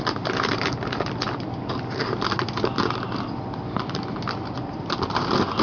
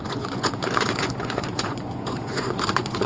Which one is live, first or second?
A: first